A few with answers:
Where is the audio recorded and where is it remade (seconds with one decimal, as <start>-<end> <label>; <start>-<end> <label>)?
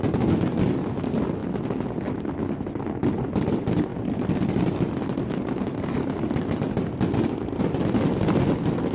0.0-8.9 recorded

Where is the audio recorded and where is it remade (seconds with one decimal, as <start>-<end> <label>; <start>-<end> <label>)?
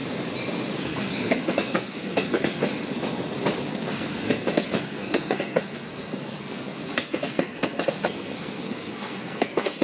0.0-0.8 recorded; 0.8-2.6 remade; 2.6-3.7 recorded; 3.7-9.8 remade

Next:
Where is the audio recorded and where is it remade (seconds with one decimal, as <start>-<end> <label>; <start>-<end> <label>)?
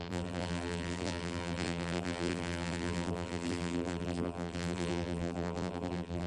0.0-6.3 remade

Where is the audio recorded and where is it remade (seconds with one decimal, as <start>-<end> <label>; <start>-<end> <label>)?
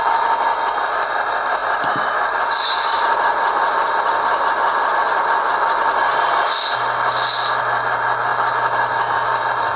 0.0-9.8 recorded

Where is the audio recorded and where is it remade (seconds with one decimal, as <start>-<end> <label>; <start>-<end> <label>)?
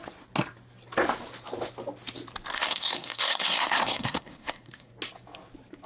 0.0-2.5 recorded; 2.5-4.9 remade; 4.9-5.9 recorded